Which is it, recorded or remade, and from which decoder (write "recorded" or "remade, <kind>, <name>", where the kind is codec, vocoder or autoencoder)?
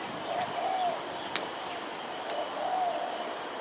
recorded